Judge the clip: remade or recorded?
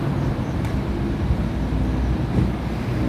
recorded